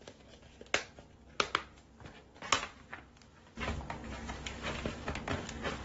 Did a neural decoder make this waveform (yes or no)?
no